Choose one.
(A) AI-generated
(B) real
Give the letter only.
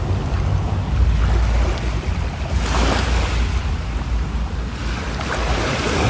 B